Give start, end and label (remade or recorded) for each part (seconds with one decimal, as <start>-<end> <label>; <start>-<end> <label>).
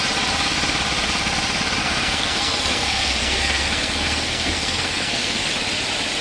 0.0-1.8 recorded; 1.8-5.5 remade; 5.5-6.2 recorded